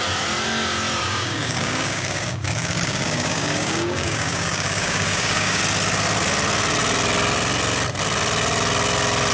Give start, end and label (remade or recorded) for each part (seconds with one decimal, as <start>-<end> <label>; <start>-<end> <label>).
0.0-1.0 recorded; 1.0-5.6 remade; 5.6-9.3 recorded